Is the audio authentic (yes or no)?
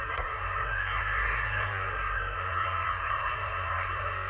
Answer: no